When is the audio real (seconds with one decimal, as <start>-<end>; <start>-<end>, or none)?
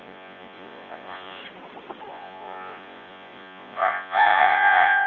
1.4-2.1